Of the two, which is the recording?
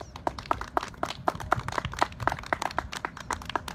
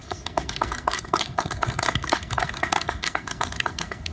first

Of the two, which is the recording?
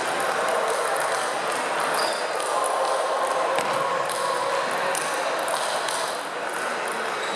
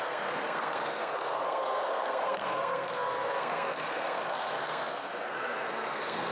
first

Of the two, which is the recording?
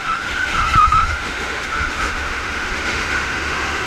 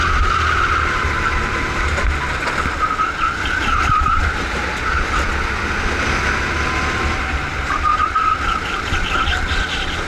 second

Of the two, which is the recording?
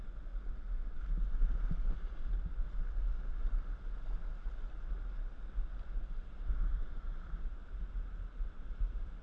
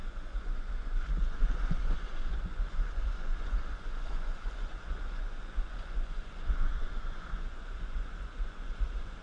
first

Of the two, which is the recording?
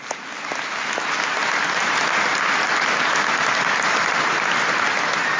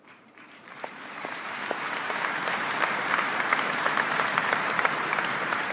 first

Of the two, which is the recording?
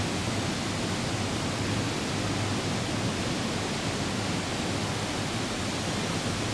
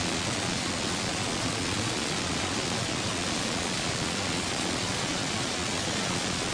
first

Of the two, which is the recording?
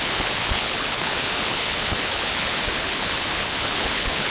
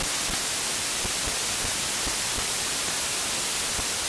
second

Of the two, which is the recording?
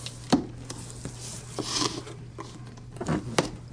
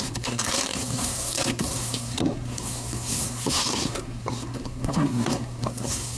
first